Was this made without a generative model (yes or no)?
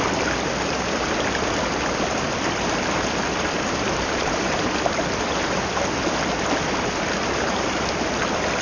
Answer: no